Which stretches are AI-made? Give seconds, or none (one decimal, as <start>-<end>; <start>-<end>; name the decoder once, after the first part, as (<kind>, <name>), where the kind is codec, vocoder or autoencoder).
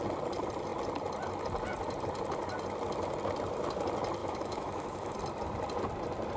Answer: 4.2-5.1 (autoencoder, DAC-VAE)